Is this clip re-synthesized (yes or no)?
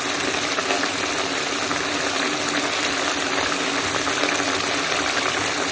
no